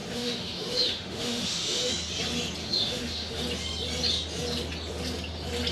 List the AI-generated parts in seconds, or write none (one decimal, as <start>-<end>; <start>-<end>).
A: 0.0-1.9; 2.6-3.4